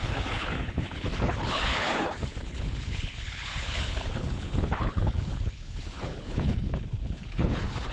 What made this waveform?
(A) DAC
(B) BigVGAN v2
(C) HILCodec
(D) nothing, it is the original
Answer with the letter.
C